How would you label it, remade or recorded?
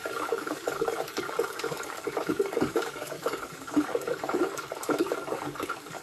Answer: remade